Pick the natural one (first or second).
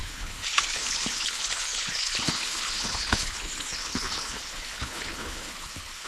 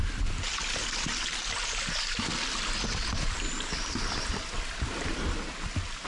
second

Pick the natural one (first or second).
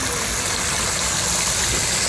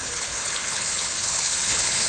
first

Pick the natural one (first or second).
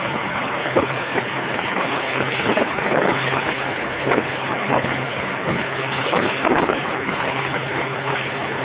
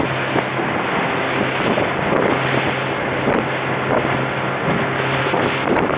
second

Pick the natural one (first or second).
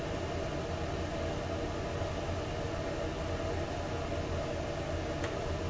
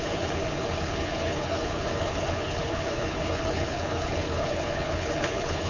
first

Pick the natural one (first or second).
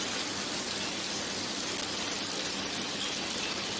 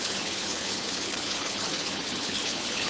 first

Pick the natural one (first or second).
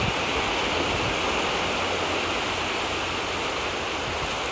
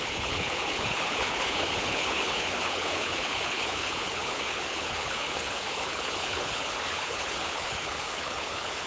first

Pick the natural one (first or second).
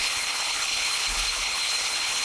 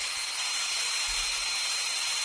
second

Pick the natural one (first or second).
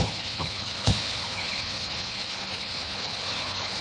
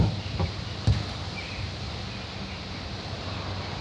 second